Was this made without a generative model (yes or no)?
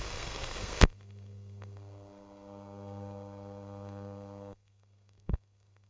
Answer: no